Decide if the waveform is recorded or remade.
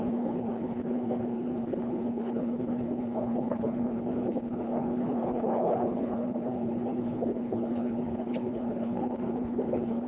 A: remade